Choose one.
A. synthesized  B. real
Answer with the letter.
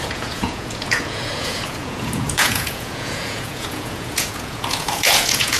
A